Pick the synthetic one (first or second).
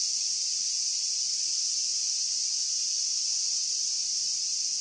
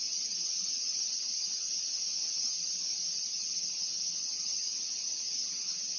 second